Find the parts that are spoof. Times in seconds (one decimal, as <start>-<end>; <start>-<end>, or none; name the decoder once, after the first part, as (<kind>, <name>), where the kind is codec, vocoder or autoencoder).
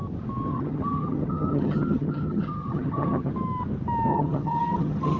0.5-3.3 (vocoder, HiFi-GAN); 4.1-5.2